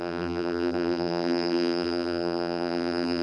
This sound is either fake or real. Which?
fake